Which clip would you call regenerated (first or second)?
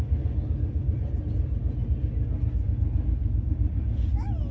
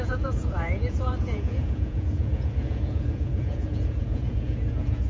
second